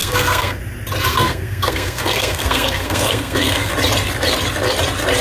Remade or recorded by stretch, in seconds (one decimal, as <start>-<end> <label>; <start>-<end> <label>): 0.0-0.6 remade; 0.6-1.1 recorded; 1.1-3.7 remade; 3.7-5.2 recorded